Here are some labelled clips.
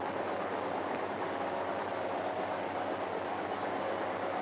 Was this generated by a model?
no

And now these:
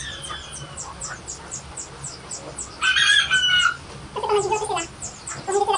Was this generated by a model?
no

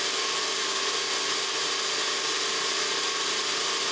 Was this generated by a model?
yes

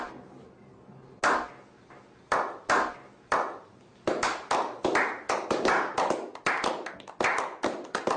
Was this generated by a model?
no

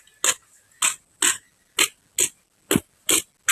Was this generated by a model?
no